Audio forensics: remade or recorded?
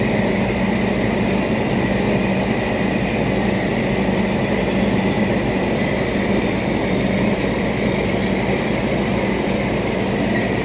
recorded